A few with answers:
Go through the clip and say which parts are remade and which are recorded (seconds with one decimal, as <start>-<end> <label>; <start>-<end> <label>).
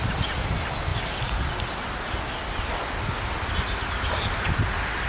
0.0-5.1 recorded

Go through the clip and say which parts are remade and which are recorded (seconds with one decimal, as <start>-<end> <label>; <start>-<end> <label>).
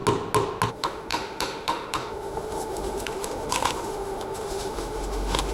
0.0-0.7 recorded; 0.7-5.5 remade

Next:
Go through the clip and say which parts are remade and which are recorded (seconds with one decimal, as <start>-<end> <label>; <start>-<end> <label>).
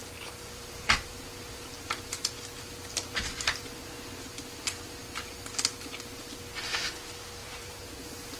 0.0-2.0 remade; 2.0-7.4 recorded; 7.4-7.9 remade; 7.9-8.4 recorded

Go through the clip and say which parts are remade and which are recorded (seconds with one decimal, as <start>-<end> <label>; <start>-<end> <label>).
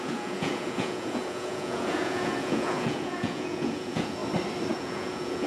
0.0-4.2 remade; 4.2-4.7 recorded; 4.7-5.5 remade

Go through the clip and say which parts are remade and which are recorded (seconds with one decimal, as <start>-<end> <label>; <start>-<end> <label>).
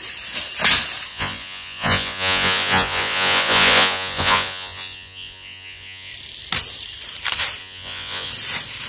0.0-1.1 recorded; 1.1-6.1 remade; 6.1-7.6 recorded; 7.6-8.3 remade; 8.3-8.9 recorded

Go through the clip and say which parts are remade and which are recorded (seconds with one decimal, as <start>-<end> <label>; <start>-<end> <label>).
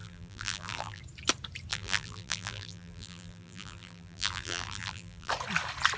0.0-1.0 remade; 1.0-1.7 recorded; 1.7-5.3 remade; 5.3-6.0 recorded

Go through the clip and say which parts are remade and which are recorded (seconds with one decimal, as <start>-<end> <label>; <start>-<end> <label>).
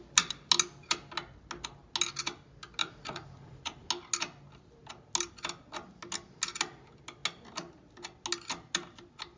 0.0-2.8 recorded; 2.8-3.9 remade; 3.9-9.4 recorded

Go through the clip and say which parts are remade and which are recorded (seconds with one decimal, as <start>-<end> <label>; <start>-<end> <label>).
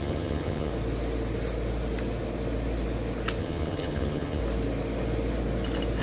0.0-0.7 remade; 0.7-3.4 recorded; 3.4-4.4 remade; 4.4-6.0 recorded